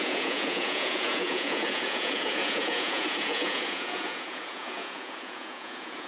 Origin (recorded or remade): remade